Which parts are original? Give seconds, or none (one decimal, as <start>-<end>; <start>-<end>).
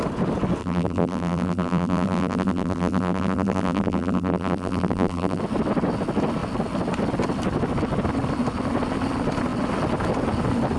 0.0-0.6; 5.4-10.8